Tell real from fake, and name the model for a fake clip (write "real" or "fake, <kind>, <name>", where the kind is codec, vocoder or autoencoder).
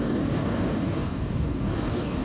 fake, codec, DAC